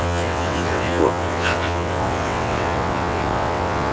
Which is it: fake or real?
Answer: fake